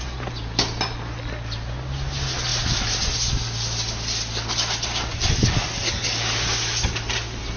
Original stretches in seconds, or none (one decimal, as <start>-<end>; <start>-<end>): 0.0-7.6